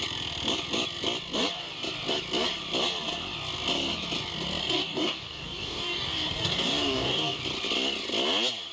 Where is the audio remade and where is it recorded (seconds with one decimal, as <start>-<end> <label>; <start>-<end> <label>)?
0.0-4.6 recorded; 4.6-7.4 remade; 7.4-8.7 recorded

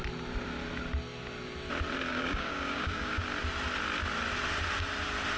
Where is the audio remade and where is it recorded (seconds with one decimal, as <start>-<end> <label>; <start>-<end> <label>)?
0.0-2.1 recorded; 2.1-3.2 remade; 3.2-5.4 recorded

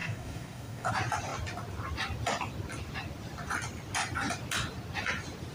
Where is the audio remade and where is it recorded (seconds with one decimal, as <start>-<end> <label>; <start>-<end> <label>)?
0.0-0.9 remade; 0.9-5.5 recorded

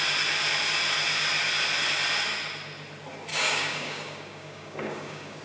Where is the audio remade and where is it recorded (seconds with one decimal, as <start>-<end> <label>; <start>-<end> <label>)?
0.0-3.3 recorded; 3.3-5.4 remade

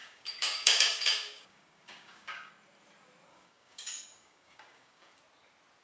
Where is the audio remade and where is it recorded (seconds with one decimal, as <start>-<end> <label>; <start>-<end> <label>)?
0.0-2.5 remade; 2.5-3.3 recorded; 3.3-5.2 remade; 5.2-5.8 recorded

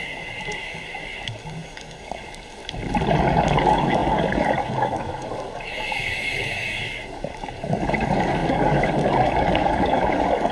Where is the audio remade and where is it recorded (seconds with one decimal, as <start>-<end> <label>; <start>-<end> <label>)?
0.0-2.6 remade; 2.6-3.2 recorded; 3.2-10.5 remade

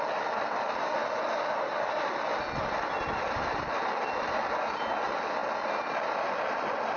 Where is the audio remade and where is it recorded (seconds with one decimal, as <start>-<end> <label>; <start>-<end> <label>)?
0.0-7.0 recorded